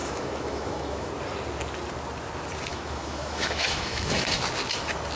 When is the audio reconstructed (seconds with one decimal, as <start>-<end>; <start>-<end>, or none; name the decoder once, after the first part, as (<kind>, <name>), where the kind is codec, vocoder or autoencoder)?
0.0-1.1 (autoencoder, DAC-VAE); 2.7-4.4